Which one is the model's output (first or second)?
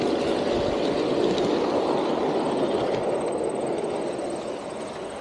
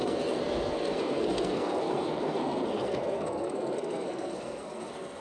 second